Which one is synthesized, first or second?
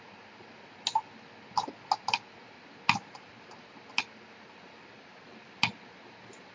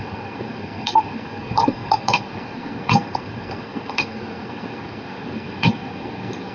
second